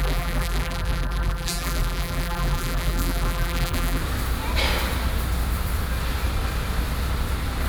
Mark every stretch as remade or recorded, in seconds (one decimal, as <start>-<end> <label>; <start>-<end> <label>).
0.0-4.0 remade; 4.0-7.7 recorded